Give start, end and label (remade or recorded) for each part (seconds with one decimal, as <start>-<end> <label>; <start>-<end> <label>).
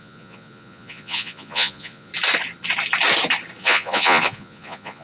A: 0.0-2.1 remade; 2.1-3.6 recorded; 3.6-5.0 remade